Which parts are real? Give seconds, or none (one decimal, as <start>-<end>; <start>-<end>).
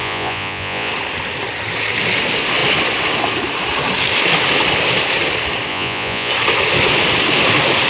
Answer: 0.9-5.7; 6.3-7.9